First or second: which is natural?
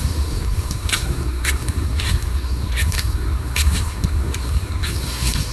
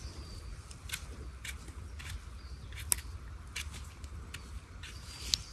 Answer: second